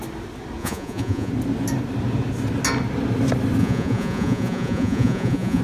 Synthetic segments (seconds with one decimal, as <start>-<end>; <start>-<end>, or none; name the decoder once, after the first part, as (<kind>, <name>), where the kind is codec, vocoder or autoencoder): 0.6-1.3 (vocoder, Vocos); 3.6-5.6